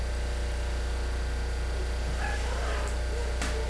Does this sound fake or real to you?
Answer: real